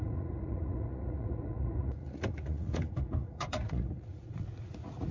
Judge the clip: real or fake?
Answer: fake